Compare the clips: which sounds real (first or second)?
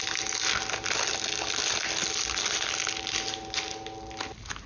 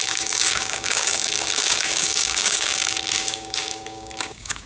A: first